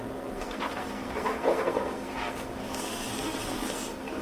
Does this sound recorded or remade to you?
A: remade